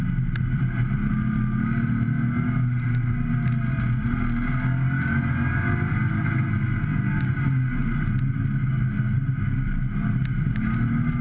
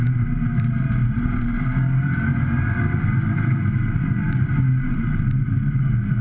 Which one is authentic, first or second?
first